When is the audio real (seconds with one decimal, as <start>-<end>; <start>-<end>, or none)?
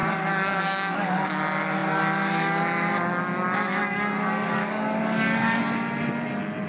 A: 1.3-3.8; 5.6-6.7